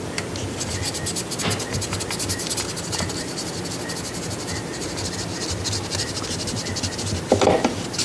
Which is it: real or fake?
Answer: real